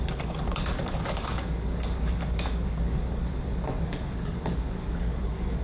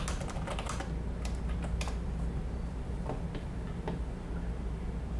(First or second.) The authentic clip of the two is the second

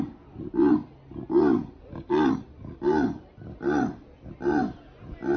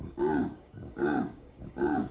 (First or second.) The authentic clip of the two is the first